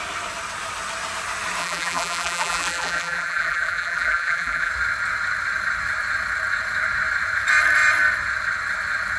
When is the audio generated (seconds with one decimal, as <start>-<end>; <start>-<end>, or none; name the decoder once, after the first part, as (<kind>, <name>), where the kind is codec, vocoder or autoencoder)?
1.6-4.7 (vocoder, BigVGAN v2)